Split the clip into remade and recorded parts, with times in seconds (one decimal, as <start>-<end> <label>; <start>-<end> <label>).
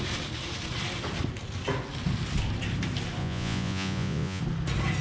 0.0-3.2 recorded; 3.2-4.4 remade; 4.4-5.0 recorded